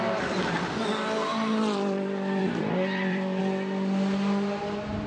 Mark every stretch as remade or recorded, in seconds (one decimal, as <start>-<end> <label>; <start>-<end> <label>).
0.0-1.3 recorded; 1.3-3.4 remade; 3.4-5.1 recorded